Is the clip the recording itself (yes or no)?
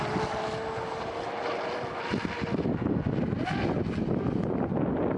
yes